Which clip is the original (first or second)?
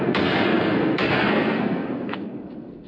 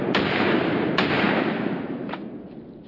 second